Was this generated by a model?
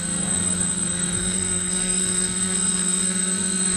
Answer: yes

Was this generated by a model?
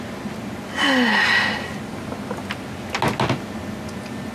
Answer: no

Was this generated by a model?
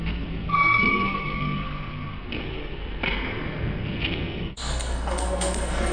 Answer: yes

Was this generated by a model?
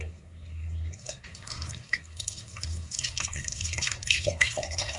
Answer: yes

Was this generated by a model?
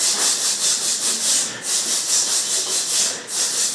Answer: no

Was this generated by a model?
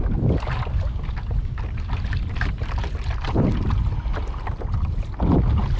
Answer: no